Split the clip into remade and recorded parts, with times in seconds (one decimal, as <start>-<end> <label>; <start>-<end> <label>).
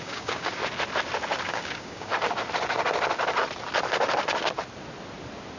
0.0-0.6 remade; 0.6-1.5 recorded; 1.5-2.1 remade; 2.1-5.6 recorded